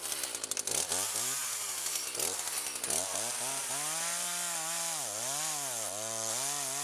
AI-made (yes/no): no